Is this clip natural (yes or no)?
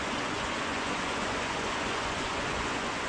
no